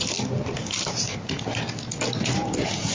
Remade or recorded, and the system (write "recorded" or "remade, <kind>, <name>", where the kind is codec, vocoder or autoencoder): recorded